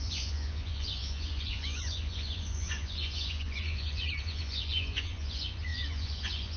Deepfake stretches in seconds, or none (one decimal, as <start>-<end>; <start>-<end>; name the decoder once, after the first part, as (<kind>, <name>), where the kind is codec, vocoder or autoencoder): 0.0-6.6 (vocoder, Vocos)